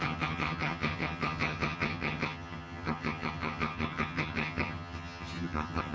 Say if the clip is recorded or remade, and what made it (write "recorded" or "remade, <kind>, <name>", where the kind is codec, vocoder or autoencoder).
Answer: remade, vocoder, HiFi-GAN